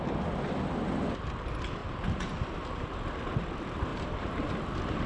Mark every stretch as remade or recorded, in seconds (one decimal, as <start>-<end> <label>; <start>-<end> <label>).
0.0-1.8 recorded; 1.8-2.9 remade; 2.9-3.9 recorded; 3.9-4.5 remade; 4.5-5.1 recorded